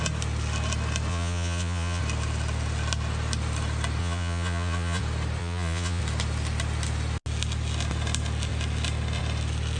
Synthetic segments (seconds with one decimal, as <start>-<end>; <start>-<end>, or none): 1.1-2.0; 4.0-5.0; 5.4-6.0